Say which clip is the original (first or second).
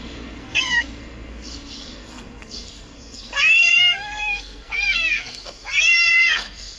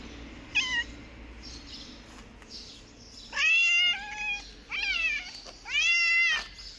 second